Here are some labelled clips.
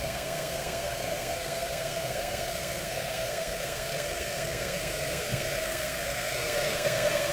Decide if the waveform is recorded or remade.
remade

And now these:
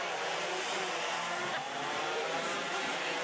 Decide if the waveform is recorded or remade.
remade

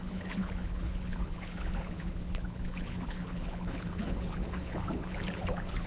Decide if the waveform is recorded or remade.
remade